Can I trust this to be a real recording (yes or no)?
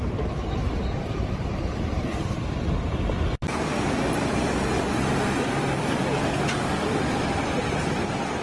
no